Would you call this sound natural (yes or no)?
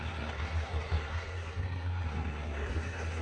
no